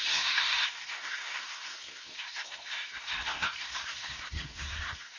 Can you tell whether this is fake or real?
fake